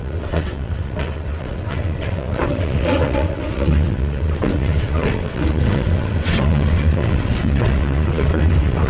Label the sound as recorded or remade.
remade